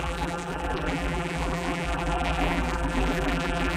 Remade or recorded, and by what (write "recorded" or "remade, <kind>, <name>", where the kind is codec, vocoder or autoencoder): remade, vocoder, BigVGAN v2